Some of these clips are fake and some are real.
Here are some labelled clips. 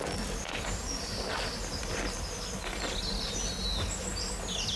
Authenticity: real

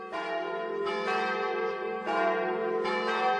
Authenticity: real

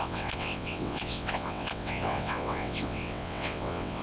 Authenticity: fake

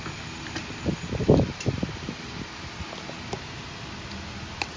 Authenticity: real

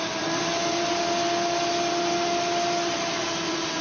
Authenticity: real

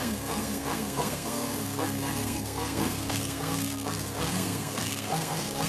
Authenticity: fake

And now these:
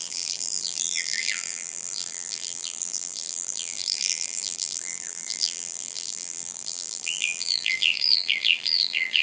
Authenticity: fake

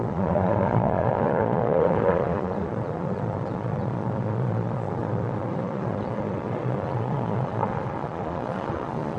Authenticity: fake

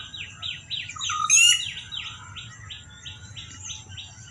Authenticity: real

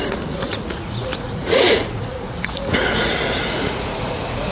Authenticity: fake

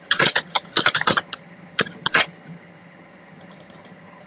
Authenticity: fake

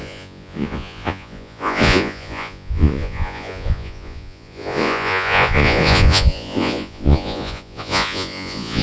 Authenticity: fake